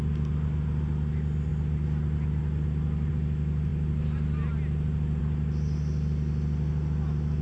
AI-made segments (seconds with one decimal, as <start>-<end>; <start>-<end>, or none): none

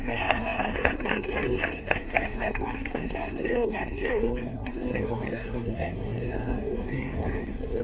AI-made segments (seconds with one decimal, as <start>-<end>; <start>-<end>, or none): 0.0-7.8

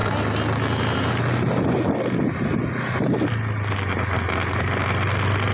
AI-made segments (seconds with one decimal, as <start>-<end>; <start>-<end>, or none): none

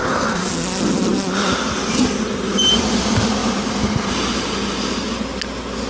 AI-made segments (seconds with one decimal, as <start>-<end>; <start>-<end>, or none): 0.0-0.5

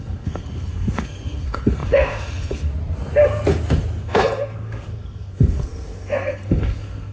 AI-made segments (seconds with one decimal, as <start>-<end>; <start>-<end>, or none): 0.0-2.7; 4.0-7.1

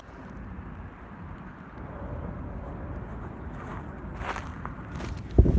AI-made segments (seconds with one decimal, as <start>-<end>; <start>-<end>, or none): none

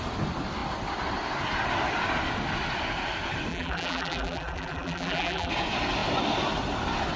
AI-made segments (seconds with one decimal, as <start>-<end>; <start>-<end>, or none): 3.5-5.5